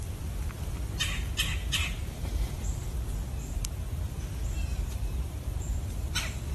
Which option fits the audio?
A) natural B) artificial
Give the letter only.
B